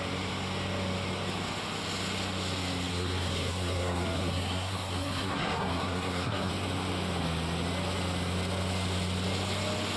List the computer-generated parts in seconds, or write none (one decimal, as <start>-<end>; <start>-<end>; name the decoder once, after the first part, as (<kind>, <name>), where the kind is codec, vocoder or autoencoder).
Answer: 2.9-6.5 (codec, SNAC)